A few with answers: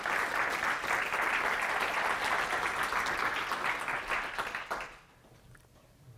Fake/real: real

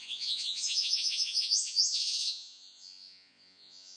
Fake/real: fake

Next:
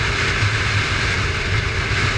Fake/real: real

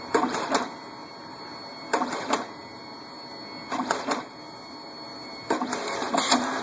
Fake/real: real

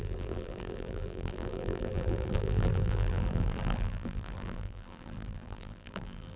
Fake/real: fake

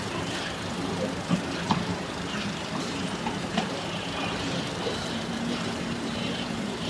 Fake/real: fake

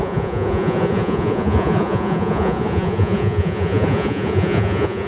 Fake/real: fake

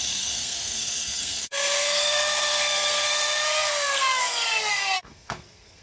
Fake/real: fake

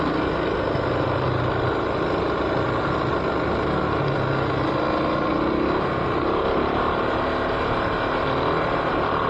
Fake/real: real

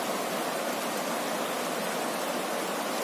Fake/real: real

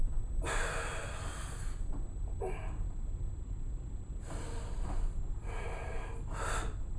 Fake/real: real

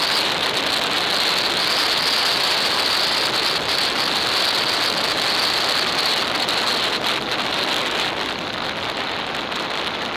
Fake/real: real